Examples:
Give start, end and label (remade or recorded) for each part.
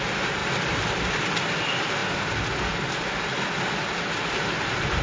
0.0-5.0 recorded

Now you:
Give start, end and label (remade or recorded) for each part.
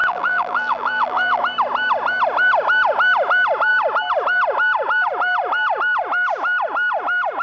0.0-1.4 remade; 1.4-7.4 recorded